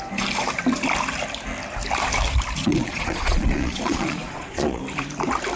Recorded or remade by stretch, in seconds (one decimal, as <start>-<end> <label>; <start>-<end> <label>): 0.0-2.6 recorded; 2.6-4.8 remade; 4.8-5.6 recorded